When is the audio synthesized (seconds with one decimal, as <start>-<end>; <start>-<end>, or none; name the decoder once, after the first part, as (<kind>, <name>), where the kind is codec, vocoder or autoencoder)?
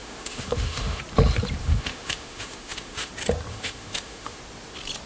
0.0-1.0 (autoencoder, DAC-VAE); 1.6-3.1; 3.5-4.4